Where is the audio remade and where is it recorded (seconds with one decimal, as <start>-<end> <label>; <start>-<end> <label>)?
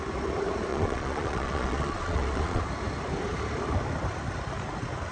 0.0-0.7 recorded; 0.7-2.6 remade; 2.6-5.1 recorded